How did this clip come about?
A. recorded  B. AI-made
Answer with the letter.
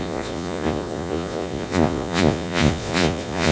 B